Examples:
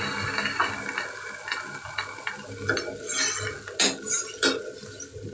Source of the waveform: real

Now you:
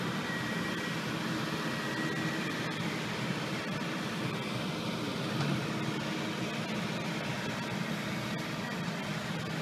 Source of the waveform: real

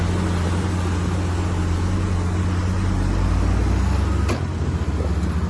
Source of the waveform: real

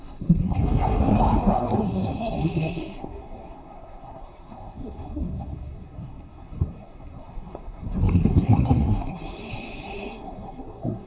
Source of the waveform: fake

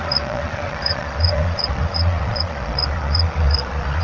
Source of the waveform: fake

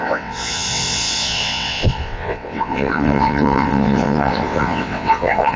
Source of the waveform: fake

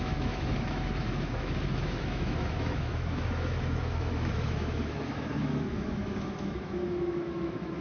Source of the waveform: fake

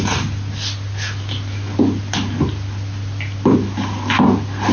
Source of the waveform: real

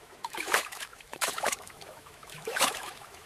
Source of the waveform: fake